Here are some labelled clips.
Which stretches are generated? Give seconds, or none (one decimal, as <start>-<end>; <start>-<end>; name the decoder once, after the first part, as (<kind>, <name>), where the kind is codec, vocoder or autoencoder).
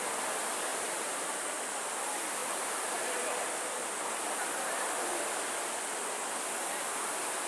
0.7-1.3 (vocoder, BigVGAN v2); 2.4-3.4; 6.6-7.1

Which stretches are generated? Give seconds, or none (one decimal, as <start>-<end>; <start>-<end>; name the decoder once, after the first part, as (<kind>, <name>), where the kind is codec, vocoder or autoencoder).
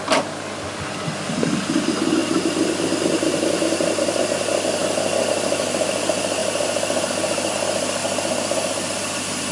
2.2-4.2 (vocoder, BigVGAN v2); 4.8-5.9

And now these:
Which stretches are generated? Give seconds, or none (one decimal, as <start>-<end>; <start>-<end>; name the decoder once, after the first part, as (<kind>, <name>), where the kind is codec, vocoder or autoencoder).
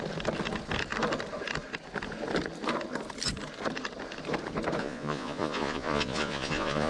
4.8-6.9 (vocoder, Vocos)